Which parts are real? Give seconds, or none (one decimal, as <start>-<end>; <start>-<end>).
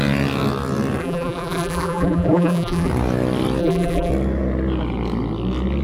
0.0-1.0; 2.9-3.6; 4.1-5.8